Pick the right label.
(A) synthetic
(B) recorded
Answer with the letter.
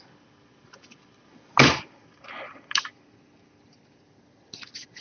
B